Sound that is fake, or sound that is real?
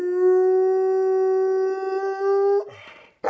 real